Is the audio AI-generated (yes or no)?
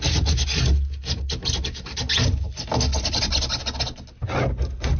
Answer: no